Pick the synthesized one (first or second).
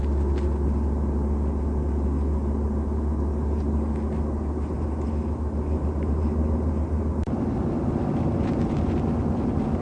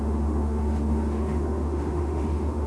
second